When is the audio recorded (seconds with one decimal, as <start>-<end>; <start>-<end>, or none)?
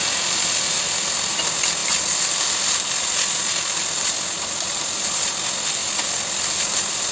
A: 0.0-7.1